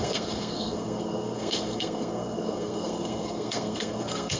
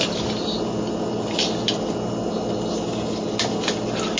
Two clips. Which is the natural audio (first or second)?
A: second